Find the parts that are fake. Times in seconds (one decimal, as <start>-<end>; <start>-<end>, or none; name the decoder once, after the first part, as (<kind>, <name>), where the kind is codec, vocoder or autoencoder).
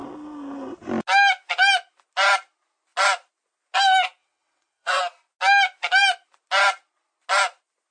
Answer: 4.2-5.0 (vocoder, WaveNeXt)